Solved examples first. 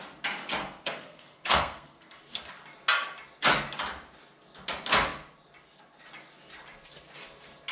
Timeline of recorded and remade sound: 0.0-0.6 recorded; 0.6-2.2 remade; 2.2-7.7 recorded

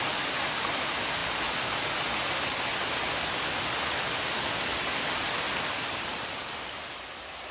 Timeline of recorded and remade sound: 0.0-7.5 recorded

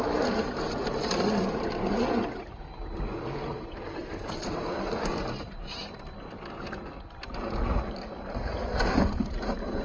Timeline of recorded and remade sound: 0.0-4.0 recorded; 4.0-5.1 remade; 5.1-9.8 recorded

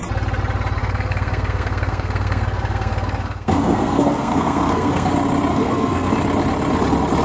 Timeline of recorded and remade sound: 0.0-0.8 recorded; 0.8-5.1 remade; 5.1-5.5 recorded; 5.5-6.1 remade; 6.1-7.2 recorded

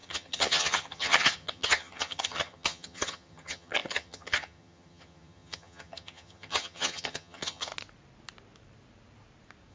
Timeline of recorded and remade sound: 0.0-7.7 remade; 7.7-9.7 recorded

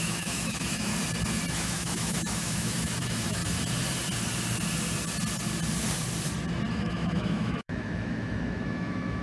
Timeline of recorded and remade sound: 0.0-0.9 remade; 0.9-1.5 recorded; 1.5-3.4 remade; 3.4-6.7 recorded; 6.7-9.2 remade

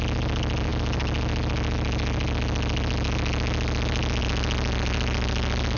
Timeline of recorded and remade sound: 0.0-5.8 recorded